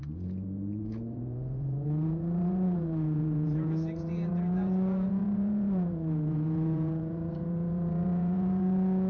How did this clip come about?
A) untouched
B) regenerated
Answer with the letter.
B